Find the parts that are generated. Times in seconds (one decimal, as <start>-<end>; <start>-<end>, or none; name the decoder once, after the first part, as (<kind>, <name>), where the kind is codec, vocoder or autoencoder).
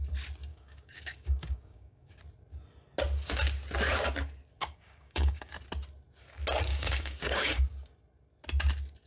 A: 0.5-2.2 (codec, DAC); 4.6-5.5; 6.7-7.6